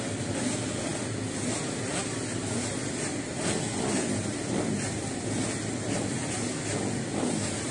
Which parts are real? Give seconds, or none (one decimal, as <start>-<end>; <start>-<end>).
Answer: 0.0-7.7